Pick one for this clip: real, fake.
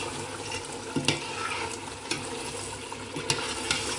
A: real